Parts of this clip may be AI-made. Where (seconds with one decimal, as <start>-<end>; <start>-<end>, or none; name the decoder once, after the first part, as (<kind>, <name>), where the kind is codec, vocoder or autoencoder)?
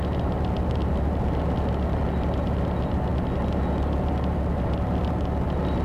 none